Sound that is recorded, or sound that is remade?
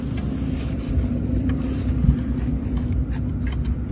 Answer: recorded